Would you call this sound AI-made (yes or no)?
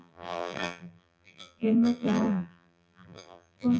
yes